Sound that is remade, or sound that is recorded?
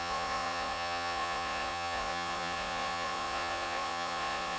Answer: remade